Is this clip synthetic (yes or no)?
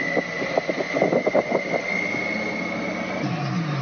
no